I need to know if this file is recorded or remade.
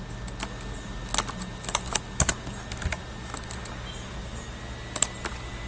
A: recorded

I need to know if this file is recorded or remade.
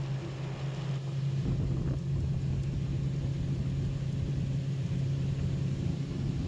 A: recorded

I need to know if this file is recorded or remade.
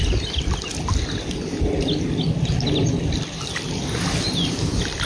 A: recorded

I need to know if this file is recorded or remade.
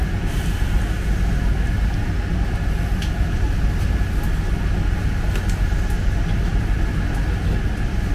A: recorded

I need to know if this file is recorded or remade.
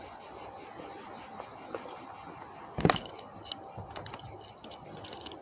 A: recorded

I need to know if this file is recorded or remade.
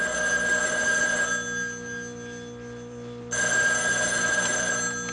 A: recorded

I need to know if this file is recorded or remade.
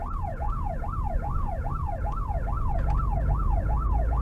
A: remade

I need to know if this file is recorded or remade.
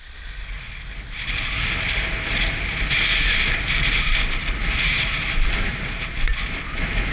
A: recorded